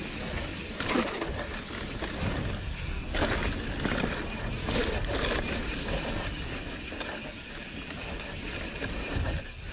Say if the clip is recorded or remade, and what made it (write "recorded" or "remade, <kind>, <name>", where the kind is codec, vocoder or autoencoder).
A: recorded